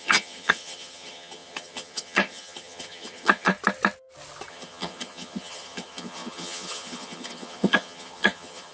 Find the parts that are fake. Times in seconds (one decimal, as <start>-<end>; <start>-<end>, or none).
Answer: 0.0-3.5; 4.5-8.7